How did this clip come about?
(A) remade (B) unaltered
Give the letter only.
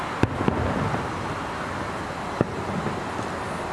B